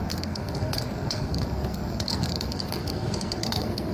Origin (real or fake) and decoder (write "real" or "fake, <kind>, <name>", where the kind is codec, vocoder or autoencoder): fake, codec, SNAC